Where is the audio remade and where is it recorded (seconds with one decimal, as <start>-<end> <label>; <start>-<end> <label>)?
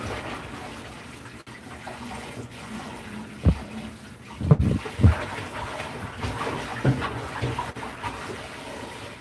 0.0-1.9 recorded; 1.9-3.0 remade; 3.0-6.7 recorded; 6.7-7.8 remade; 7.8-9.2 recorded